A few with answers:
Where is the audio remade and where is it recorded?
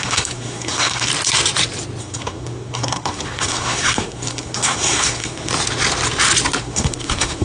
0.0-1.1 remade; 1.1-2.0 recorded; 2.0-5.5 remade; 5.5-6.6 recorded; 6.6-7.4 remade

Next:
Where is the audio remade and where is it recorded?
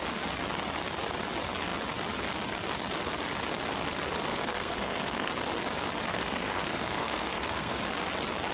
0.0-4.3 recorded; 4.3-5.3 remade; 5.3-6.1 recorded; 6.1-7.8 remade; 7.8-8.5 recorded